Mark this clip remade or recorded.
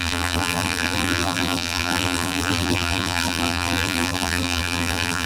remade